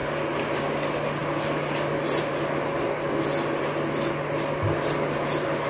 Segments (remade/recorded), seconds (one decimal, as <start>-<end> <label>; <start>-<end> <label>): 0.0-5.7 recorded